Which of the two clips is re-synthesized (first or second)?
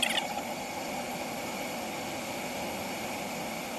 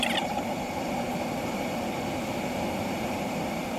second